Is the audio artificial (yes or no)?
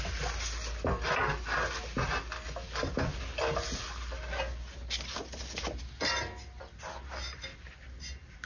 no